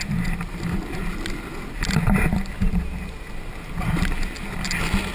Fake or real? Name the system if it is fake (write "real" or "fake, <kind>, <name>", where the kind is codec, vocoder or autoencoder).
real